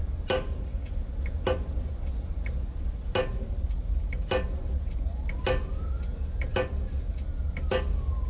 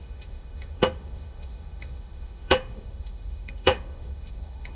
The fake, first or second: second